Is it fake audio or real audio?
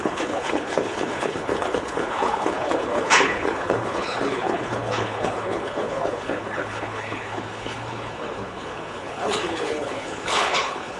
fake